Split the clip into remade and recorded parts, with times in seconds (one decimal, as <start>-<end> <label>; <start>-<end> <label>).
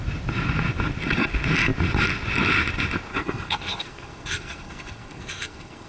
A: 0.0-3.1 recorded; 3.1-5.9 remade